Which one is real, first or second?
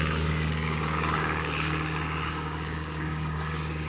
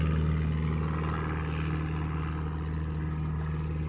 second